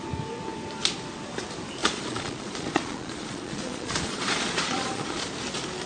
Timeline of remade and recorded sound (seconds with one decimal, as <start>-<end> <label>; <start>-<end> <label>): 0.0-1.8 recorded; 1.8-5.2 remade; 5.2-5.9 recorded